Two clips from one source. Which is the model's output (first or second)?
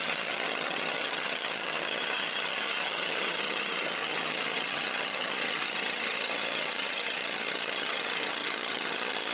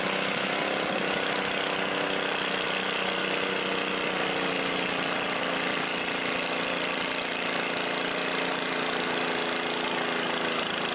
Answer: first